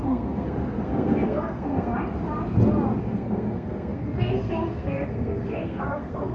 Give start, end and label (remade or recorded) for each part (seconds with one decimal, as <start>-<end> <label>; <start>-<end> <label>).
0.0-1.9 remade; 1.9-3.0 recorded; 3.0-6.3 remade